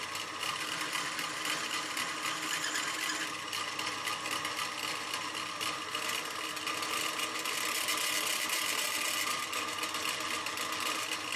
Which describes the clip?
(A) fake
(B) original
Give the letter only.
B